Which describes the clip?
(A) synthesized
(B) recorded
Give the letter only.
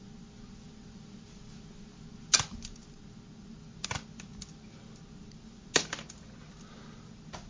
B